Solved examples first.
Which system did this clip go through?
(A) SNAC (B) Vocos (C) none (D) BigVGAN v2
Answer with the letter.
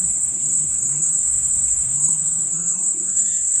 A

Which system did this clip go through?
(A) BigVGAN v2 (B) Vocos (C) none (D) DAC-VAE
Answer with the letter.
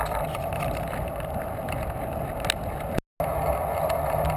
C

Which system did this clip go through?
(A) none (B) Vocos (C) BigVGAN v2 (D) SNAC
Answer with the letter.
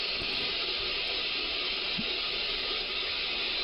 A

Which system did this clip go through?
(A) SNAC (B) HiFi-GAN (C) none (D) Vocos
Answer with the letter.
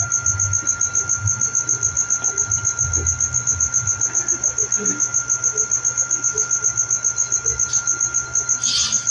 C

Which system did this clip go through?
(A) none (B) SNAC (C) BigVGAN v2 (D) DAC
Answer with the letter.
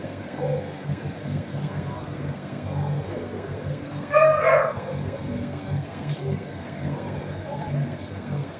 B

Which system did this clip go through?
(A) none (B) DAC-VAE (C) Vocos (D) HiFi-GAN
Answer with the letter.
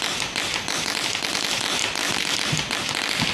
A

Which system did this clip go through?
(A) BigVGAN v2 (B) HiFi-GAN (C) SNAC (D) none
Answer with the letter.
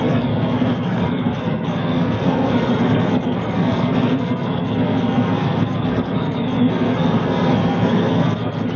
C